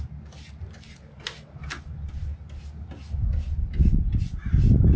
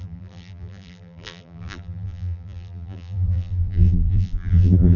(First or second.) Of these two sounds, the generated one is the second